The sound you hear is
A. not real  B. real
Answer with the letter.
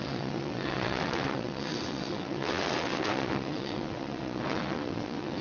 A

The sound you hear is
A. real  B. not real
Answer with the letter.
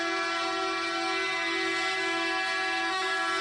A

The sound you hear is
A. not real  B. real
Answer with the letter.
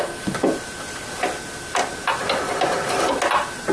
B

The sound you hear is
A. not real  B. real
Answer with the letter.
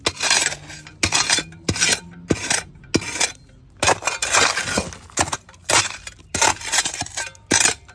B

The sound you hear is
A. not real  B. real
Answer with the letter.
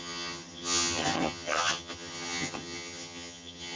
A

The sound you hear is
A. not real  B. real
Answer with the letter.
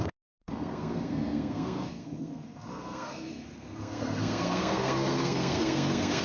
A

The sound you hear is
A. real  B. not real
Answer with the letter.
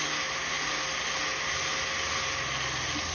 A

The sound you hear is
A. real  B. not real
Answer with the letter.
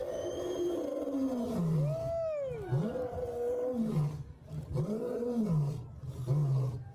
A